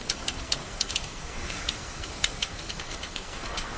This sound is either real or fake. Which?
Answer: fake